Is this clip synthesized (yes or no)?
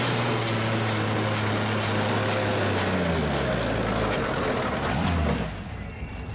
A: no